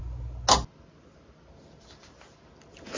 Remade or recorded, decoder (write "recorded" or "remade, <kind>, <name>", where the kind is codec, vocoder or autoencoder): recorded